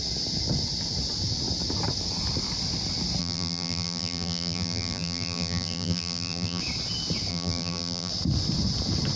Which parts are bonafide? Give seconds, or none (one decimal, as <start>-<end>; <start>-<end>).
0.0-3.2; 6.6-7.3; 8.1-9.2